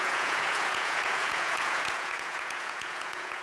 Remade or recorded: remade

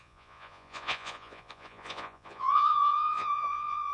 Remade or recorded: remade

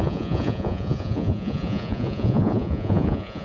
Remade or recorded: remade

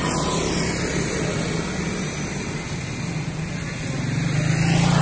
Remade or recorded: recorded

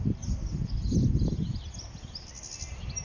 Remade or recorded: recorded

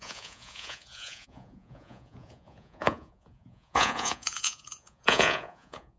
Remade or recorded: remade